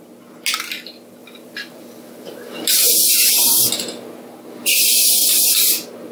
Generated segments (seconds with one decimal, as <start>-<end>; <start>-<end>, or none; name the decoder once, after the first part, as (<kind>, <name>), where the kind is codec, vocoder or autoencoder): 1.2-3.3 (vocoder, BigVGAN v2)